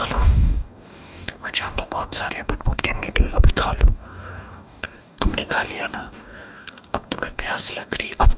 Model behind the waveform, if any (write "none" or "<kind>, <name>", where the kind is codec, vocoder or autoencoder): codec, DAC